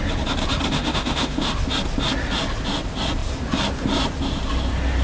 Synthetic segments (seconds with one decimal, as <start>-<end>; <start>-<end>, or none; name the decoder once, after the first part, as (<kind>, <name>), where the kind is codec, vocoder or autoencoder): 0.7-1.5 (autoencoder, DAC-VAE)